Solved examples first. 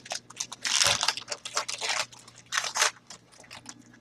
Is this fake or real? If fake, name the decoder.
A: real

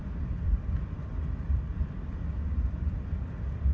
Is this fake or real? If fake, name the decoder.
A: fake, vocoder, BigVGAN v2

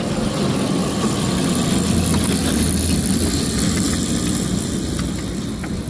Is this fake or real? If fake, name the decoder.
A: real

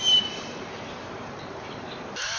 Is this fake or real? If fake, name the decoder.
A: fake, vocoder, BigVGAN v2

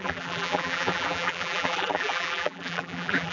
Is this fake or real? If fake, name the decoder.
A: fake, vocoder, BigVGAN v2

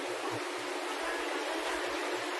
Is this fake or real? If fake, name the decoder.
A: real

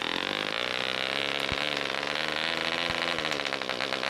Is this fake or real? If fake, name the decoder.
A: real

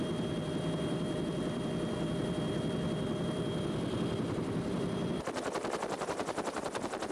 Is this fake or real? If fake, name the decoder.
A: fake, vocoder, BigVGAN v2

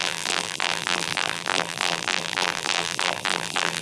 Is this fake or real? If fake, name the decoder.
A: fake, vocoder, BigVGAN v2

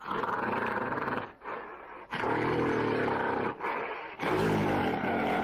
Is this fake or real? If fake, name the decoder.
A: fake, vocoder, BigVGAN v2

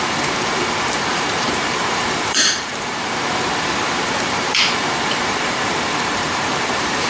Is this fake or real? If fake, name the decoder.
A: fake, vocoder, BigVGAN v2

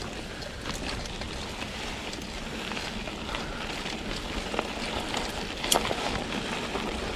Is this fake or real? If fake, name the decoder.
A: real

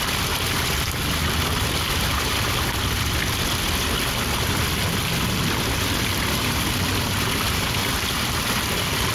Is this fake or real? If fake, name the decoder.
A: real